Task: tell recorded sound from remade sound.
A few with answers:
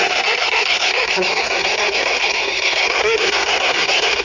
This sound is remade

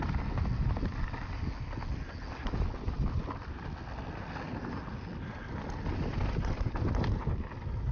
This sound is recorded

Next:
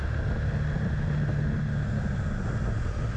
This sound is recorded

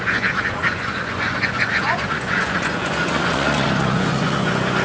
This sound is remade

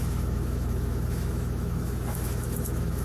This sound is remade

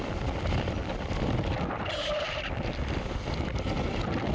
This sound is recorded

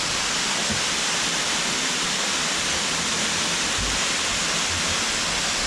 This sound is recorded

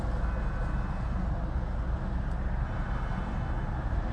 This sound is recorded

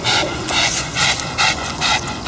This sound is remade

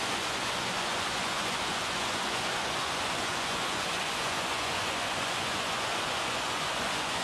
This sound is remade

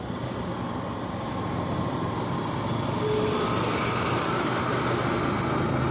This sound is recorded